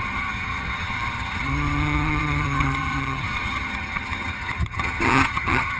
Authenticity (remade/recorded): remade